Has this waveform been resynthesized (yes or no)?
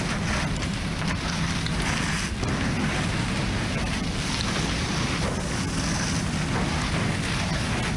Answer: no